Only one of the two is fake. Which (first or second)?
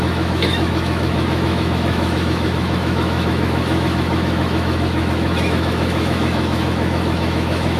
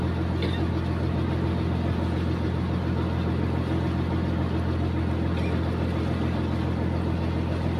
first